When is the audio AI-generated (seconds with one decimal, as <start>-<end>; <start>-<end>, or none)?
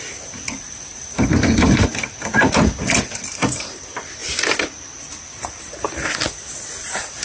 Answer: none